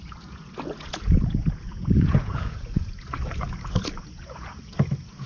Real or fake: fake